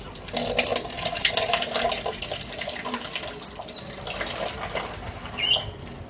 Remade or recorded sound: recorded